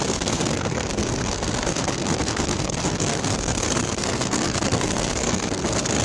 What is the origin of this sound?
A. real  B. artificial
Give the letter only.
B